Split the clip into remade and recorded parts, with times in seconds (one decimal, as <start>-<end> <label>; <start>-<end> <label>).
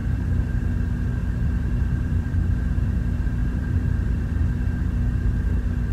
0.0-0.5 remade; 0.5-1.2 recorded; 1.2-3.0 remade; 3.0-3.4 recorded; 3.4-4.4 remade; 4.4-5.9 recorded